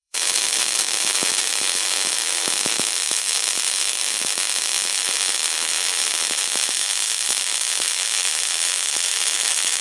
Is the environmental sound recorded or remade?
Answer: remade